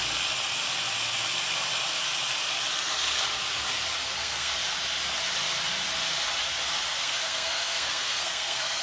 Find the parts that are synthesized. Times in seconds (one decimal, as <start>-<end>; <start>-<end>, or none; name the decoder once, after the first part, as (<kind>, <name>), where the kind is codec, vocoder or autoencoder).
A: 4.0-4.5 (codec, SNAC); 6.9-8.8